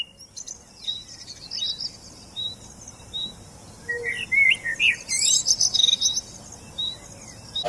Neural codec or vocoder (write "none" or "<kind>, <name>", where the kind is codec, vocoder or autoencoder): none